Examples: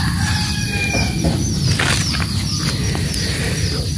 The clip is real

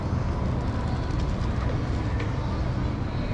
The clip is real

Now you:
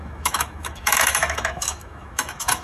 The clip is fake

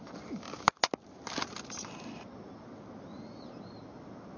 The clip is real